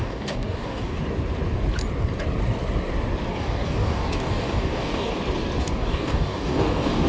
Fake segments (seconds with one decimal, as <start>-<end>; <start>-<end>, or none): 0.0-1.0; 3.3-5.1; 5.6-7.1